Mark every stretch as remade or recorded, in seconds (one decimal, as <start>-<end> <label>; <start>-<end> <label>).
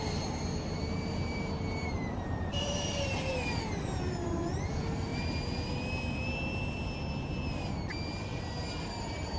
0.0-5.1 remade; 5.1-9.0 recorded; 9.0-9.4 remade